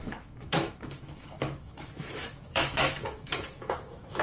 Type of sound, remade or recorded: remade